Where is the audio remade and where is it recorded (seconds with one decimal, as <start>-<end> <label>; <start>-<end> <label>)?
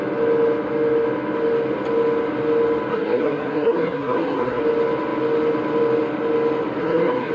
0.0-2.9 recorded; 2.9-4.6 remade; 4.6-6.8 recorded; 6.8-7.3 remade